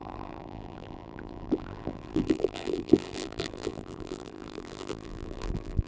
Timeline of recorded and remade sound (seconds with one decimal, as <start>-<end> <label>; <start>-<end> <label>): 0.0-5.9 remade